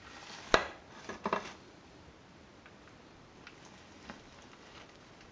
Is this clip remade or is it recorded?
recorded